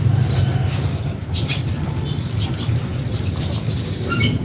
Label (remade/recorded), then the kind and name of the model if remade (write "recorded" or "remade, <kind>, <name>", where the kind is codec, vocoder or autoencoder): recorded